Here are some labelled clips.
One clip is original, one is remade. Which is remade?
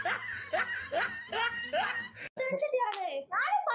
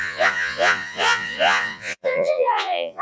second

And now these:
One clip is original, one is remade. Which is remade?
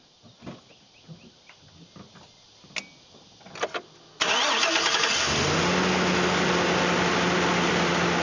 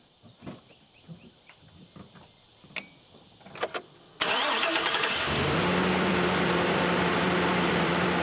second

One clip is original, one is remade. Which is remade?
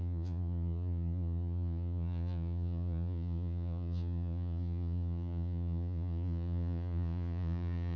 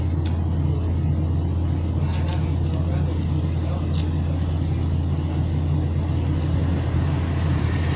first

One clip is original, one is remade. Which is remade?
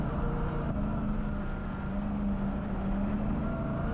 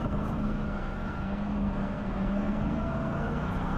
second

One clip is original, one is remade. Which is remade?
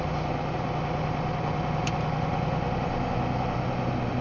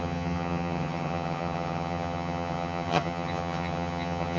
second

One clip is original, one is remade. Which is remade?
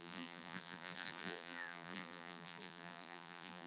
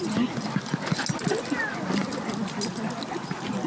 first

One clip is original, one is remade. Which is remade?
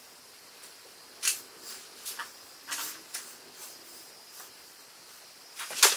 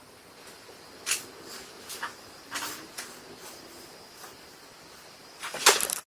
first